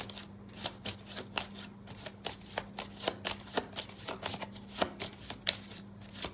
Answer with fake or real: real